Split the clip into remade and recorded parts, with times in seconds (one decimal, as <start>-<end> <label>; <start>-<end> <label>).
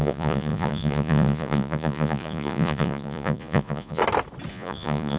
0.0-4.0 remade; 4.0-4.5 recorded; 4.5-5.2 remade